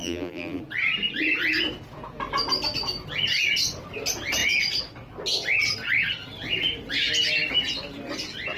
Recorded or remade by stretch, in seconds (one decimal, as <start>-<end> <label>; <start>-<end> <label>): 0.0-0.6 remade; 0.6-8.6 recorded